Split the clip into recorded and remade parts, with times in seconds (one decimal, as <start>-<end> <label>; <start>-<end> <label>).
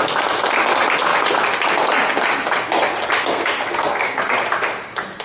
0.0-3.2 recorded; 3.2-4.2 remade; 4.2-5.2 recorded